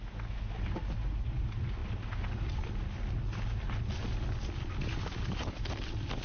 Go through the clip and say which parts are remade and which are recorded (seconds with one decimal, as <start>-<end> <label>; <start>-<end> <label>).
0.0-6.2 recorded